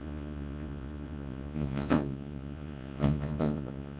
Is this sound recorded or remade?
remade